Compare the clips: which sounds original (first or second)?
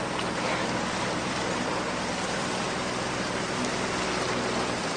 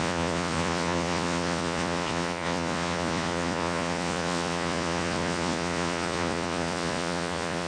first